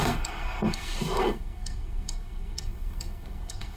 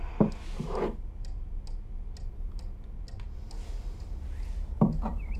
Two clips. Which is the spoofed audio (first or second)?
first